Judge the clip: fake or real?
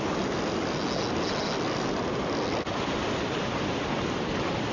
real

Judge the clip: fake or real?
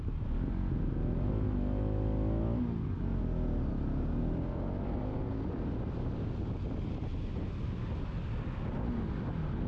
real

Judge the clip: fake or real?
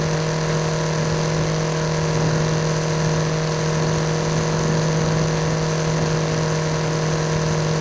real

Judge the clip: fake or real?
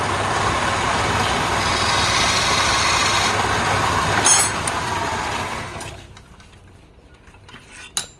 real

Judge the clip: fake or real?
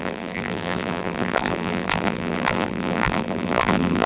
fake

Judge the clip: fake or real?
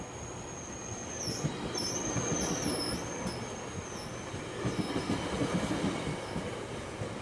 real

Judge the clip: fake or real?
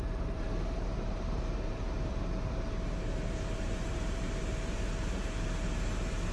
fake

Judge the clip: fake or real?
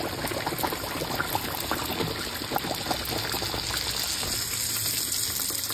real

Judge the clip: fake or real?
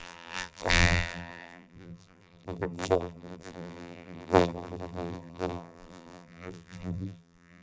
fake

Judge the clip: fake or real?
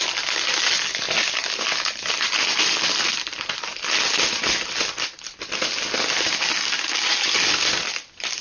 real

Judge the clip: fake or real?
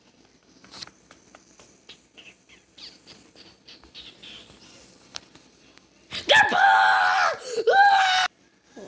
fake